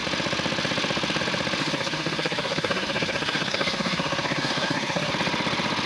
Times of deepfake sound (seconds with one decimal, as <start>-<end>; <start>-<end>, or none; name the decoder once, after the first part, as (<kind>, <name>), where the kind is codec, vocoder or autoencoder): 1.6-5.1 (codec, SNAC)